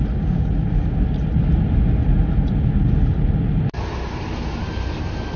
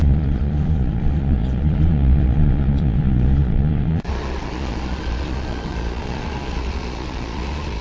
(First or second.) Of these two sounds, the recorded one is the first